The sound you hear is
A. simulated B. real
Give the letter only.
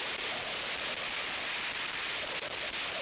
B